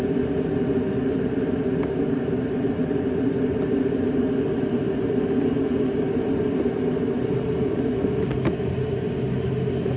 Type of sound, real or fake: real